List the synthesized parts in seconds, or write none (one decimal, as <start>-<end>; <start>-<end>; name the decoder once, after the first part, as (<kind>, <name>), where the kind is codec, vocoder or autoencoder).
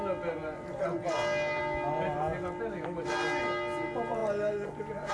none